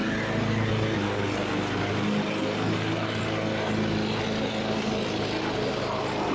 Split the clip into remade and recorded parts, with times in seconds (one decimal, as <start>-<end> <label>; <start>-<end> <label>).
0.0-6.3 recorded